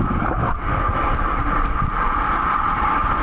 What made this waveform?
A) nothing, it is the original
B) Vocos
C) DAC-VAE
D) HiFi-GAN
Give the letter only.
A